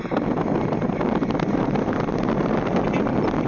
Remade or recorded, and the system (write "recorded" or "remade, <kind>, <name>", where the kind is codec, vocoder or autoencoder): recorded